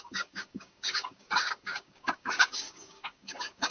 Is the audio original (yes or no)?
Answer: no